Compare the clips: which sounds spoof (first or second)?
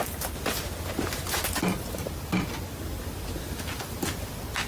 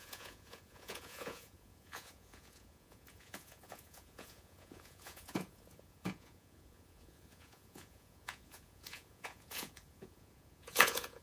second